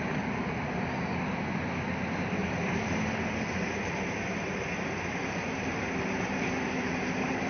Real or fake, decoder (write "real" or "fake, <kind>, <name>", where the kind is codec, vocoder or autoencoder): real